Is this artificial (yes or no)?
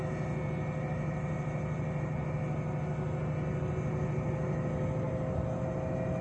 no